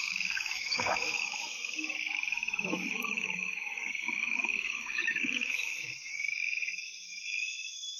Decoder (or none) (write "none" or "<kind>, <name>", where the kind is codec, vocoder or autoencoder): autoencoder, DAC-VAE